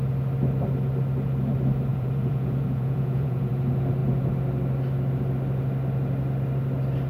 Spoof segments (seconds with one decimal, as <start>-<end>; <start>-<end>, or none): 1.9-3.5